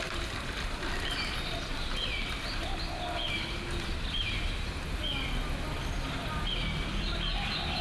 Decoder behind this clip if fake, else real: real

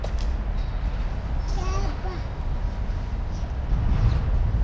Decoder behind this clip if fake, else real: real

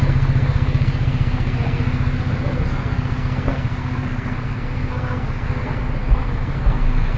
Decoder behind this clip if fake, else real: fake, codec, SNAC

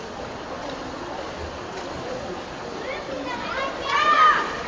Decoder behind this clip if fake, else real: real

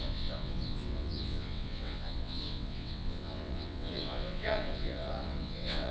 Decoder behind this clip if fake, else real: fake, vocoder, WaveNeXt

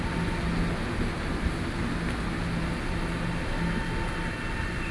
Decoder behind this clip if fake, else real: real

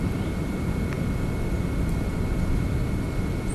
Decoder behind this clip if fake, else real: fake, vocoder, BigVGAN v2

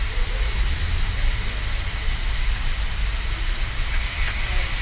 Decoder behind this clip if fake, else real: real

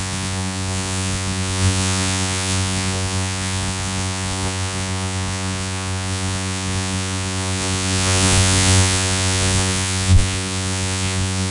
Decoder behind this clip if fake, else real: fake, vocoder, Vocos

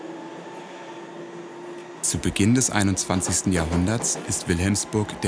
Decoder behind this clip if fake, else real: real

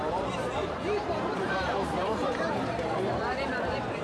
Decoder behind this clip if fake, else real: fake, vocoder, BigVGAN v2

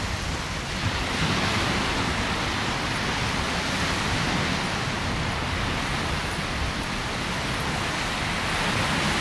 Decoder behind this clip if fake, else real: real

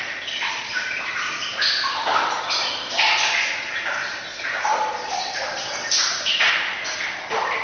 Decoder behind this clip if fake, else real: real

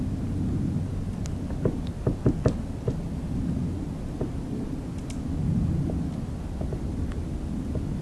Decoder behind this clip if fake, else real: real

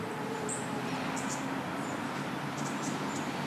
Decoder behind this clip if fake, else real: real